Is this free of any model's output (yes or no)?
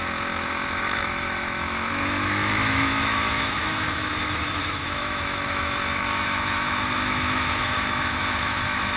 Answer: no